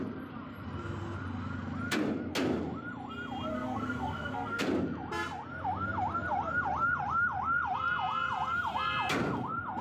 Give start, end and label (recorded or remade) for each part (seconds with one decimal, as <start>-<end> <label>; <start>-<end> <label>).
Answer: 0.0-3.5 recorded; 3.5-4.6 remade; 4.6-9.8 recorded